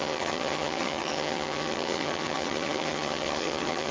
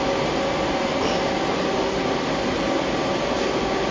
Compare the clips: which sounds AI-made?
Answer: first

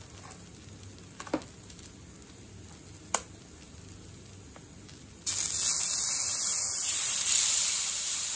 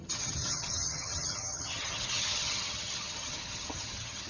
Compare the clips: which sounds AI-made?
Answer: second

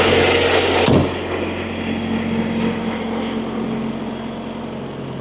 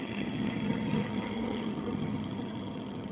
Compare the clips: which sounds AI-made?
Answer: second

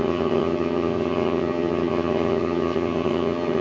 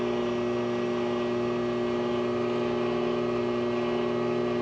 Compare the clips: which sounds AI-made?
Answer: first